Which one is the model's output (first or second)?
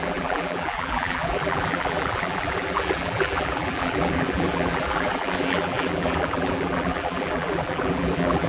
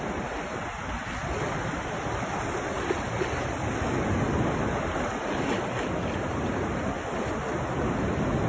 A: first